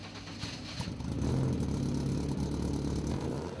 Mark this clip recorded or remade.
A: recorded